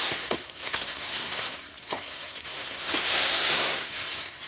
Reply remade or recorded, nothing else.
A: remade